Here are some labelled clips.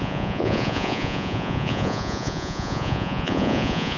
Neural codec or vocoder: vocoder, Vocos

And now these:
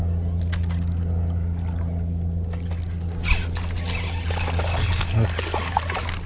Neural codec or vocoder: none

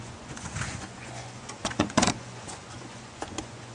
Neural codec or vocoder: vocoder, Vocos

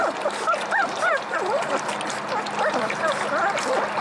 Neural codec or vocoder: none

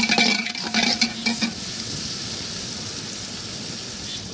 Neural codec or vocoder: none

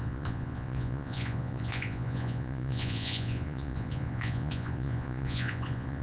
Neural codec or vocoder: vocoder, Vocos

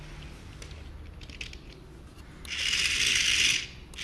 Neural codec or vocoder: none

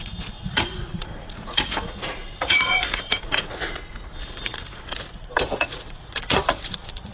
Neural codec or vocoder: vocoder, Vocos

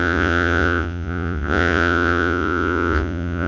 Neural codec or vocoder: vocoder, Vocos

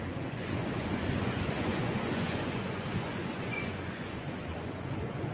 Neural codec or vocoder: vocoder, Vocos